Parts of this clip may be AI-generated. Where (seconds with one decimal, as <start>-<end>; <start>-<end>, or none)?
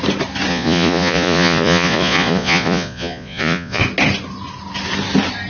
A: 0.5-3.8